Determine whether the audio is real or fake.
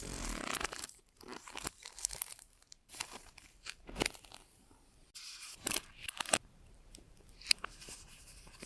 fake